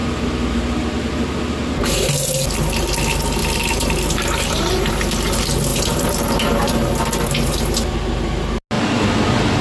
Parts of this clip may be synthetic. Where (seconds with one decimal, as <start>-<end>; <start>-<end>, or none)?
3.4-4.9; 5.7-7.0